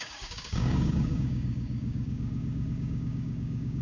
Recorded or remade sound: remade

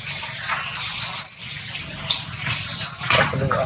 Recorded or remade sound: recorded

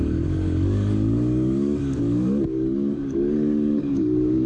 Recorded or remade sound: remade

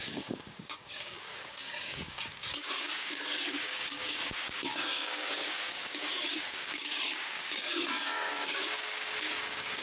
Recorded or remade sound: remade